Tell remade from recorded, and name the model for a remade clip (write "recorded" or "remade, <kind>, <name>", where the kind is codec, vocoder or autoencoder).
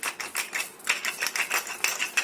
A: recorded